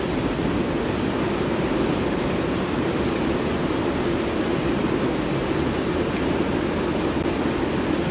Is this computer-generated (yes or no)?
no